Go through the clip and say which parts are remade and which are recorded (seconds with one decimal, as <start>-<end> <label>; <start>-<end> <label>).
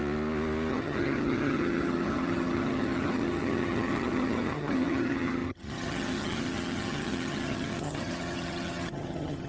0.0-0.7 recorded; 0.7-9.5 remade